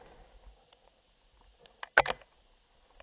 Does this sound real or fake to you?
real